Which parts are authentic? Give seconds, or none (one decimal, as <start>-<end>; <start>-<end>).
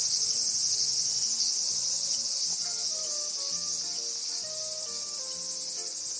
0.0-1.6; 2.1-6.2